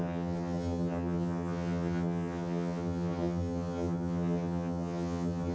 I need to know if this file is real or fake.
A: fake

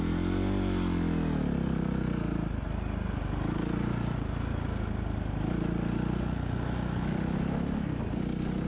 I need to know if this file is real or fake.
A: real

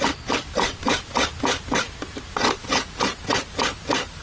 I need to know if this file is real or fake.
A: real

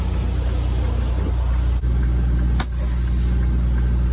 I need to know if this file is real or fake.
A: real